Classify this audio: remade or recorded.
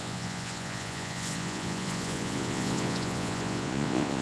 remade